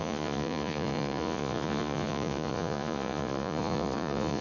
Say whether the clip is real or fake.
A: fake